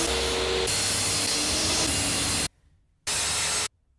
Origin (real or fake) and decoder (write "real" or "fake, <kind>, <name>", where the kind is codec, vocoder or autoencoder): real